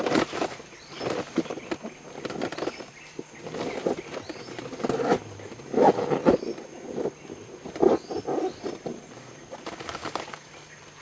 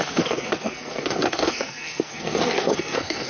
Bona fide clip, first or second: first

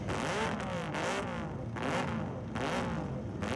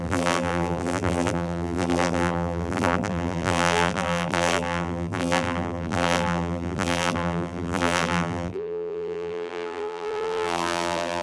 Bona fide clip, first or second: first